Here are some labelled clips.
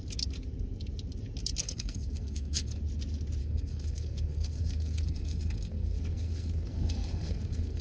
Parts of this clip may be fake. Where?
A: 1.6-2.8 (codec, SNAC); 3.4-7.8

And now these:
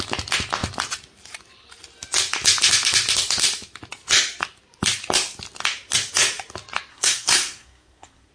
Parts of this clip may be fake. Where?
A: 6.9-8.3 (codec, SNAC)

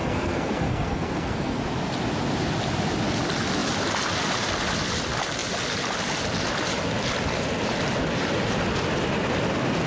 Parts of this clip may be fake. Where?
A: 0.0-1.6 (codec, SNAC)

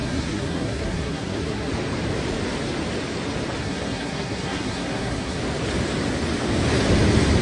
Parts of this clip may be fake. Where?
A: 0.0-1.7 (codec, SNAC); 3.6-5.4

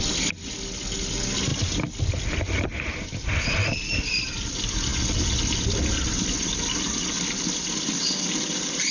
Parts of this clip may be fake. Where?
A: none

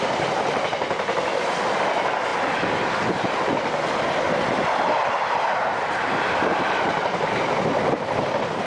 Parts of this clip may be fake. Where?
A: none